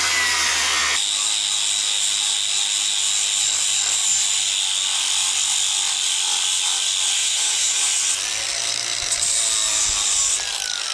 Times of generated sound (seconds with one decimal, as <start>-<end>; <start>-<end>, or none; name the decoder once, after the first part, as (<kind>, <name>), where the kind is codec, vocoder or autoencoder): 7.2-7.8 (vocoder, Vocos)